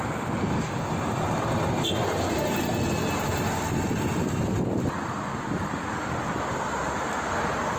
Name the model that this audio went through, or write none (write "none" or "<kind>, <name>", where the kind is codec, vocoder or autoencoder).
none